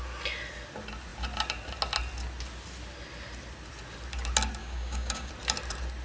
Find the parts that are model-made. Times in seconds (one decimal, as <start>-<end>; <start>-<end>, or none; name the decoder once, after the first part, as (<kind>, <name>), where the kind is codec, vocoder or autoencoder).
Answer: 4.6-5.3 (codec, DAC)

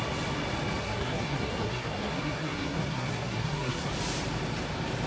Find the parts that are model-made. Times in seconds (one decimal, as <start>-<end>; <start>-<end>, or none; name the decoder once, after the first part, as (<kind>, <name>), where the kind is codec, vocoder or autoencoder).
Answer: 0.8-3.9 (codec, SNAC)